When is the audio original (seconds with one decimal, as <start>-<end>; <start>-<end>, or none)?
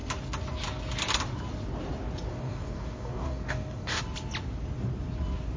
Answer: 0.0-2.3; 4.0-5.6